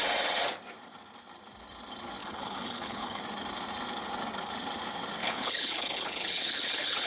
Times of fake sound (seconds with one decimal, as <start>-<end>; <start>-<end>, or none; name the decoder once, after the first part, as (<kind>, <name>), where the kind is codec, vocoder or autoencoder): 2.2-3.2 (codec, HILCodec); 5.2-7.1